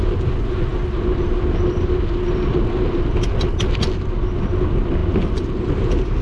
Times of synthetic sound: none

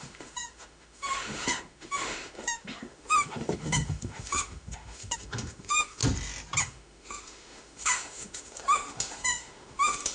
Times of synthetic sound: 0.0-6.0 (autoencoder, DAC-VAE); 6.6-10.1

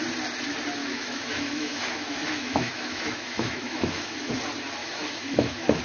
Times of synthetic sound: 0.8-4.3 (autoencoder, DAC-VAE); 4.8-5.8

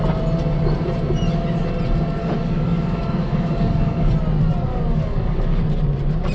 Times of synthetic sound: 2.2-4.2 (codec, DAC); 4.7-5.6

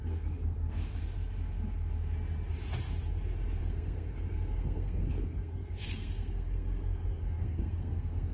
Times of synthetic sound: 0.0-1.0 (codec, SNAC); 3.6-8.3

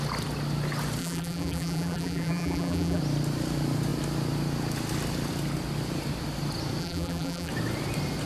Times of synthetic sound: 1.0-3.0 (vocoder, BigVGAN v2); 6.8-7.5